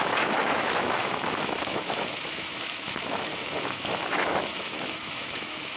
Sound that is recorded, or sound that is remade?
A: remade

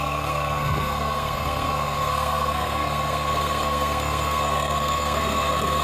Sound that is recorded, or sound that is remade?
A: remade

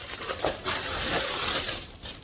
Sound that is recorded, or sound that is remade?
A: remade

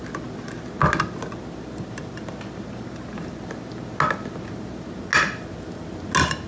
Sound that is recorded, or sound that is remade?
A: recorded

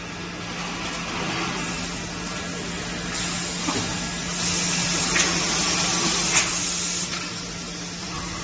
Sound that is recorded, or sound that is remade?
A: recorded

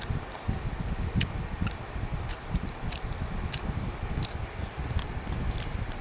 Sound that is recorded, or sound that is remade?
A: recorded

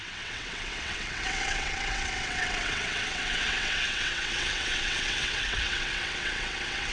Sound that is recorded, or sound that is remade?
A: remade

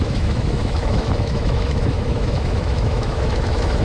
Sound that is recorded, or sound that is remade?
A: remade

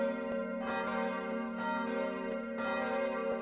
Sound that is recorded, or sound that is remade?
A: recorded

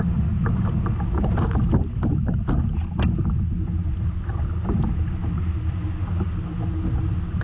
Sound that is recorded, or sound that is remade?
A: recorded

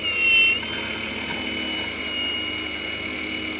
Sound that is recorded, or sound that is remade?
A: recorded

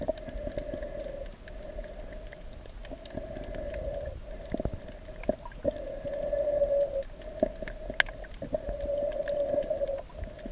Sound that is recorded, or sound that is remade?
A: recorded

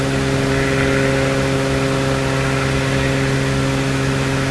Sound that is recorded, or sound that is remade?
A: recorded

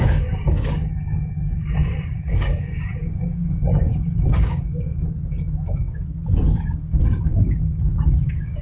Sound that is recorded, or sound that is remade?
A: remade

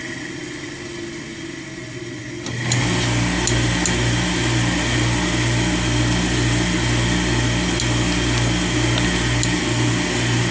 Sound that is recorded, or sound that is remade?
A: recorded